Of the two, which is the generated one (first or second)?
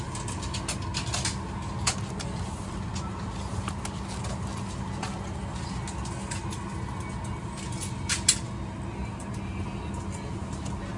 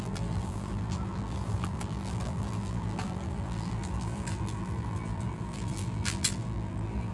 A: second